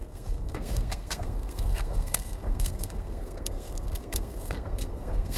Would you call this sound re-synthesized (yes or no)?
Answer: yes